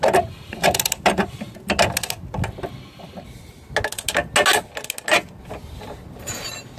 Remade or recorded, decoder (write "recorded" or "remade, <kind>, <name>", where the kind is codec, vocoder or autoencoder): recorded